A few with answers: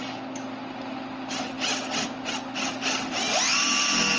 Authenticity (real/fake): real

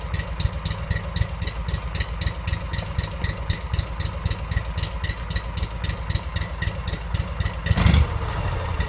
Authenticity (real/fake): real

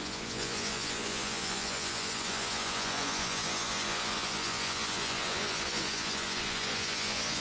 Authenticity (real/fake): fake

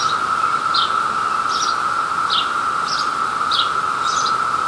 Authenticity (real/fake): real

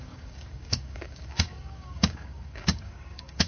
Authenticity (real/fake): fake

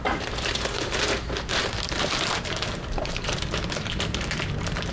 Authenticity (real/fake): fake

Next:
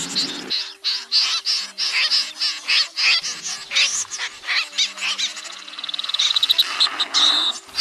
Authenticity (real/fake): real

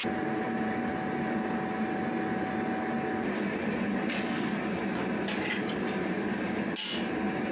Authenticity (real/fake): real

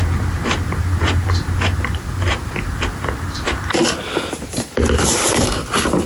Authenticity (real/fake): fake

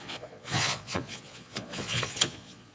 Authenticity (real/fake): fake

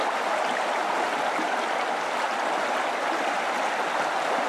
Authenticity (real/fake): real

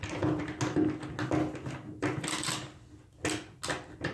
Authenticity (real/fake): real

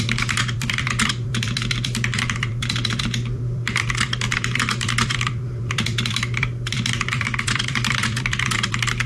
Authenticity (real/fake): fake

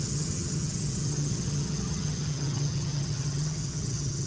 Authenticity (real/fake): fake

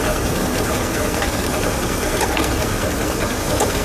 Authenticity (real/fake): fake